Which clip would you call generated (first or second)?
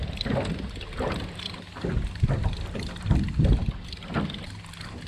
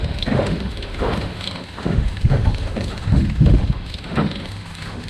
second